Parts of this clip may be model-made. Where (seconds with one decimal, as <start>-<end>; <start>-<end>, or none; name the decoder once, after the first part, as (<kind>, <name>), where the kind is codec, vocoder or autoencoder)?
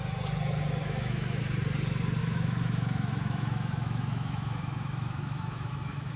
0.8-1.4 (autoencoder, DAC-VAE); 2.2-6.2